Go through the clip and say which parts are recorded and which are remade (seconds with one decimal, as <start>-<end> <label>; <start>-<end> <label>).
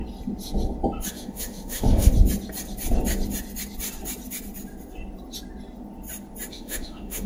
0.0-1.1 recorded; 1.1-2.1 remade; 2.1-6.5 recorded; 6.5-7.3 remade